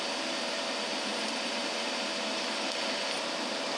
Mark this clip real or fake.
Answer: fake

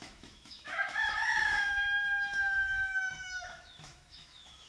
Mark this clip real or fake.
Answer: fake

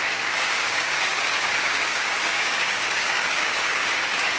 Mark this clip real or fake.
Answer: fake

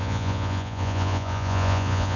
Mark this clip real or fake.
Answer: fake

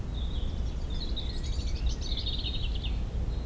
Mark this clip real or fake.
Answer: real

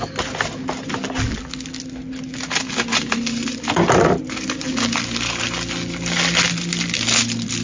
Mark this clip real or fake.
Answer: real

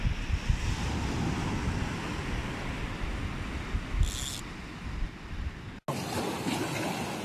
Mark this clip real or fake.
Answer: real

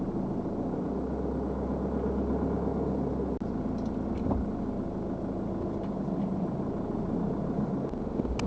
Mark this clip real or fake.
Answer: real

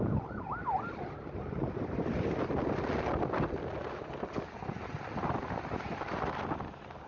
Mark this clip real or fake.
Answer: real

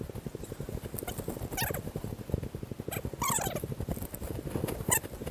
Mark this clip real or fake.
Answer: real